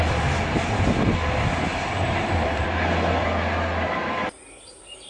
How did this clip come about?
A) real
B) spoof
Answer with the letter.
A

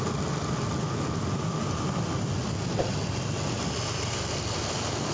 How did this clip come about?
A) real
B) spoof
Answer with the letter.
A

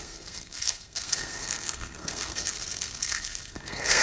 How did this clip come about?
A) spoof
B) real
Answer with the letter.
A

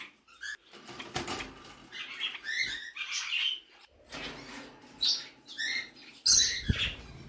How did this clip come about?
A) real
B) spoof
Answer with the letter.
A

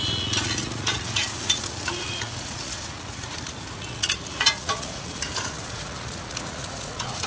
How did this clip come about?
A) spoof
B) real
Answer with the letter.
A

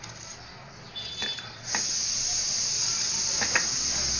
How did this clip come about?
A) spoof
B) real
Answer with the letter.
B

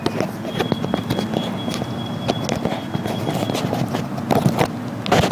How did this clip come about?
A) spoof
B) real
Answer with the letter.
B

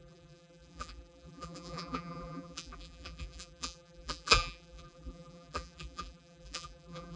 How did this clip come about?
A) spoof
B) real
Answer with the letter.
A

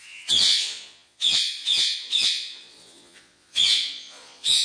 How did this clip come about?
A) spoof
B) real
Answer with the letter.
A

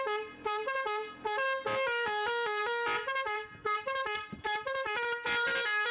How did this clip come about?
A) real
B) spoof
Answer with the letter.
A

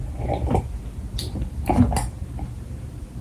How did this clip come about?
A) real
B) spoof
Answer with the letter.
A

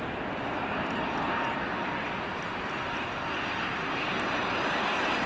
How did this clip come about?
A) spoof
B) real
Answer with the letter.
B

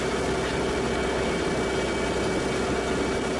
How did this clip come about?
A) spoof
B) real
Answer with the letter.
B